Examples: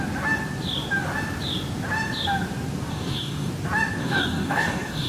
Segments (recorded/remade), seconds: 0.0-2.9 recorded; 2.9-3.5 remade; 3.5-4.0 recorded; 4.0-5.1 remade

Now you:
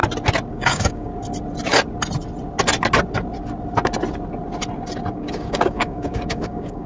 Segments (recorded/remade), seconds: 0.0-0.5 recorded; 0.5-1.1 remade; 1.1-5.1 recorded; 5.1-6.9 remade